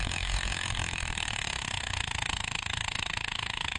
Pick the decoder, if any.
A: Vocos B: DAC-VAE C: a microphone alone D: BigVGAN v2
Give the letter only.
B